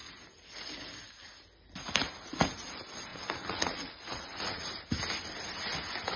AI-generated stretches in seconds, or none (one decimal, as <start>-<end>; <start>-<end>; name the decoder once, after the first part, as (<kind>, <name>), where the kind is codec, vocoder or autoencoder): 3.1-4.7 (vocoder, Vocos)